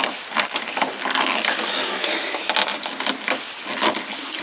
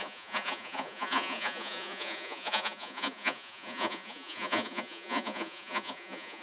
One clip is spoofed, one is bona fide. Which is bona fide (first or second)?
first